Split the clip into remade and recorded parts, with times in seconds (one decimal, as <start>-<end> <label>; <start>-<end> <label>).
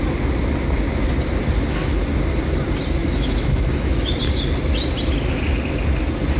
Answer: 0.0-3.0 recorded; 3.0-4.1 remade; 4.1-6.4 recorded